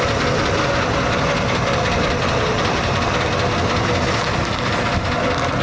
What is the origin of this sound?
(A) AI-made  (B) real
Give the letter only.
B